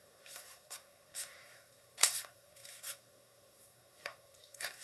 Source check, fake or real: fake